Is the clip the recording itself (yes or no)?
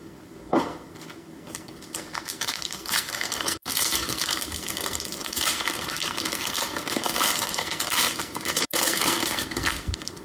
no